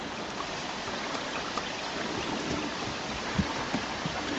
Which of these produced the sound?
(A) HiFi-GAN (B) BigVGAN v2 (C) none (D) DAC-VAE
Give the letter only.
B